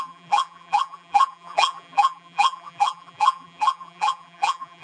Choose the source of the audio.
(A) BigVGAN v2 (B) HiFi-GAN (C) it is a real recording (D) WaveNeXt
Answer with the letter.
A